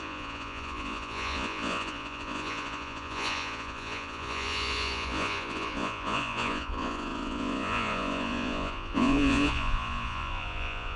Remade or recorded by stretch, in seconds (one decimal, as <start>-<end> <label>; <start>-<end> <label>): 0.0-11.0 remade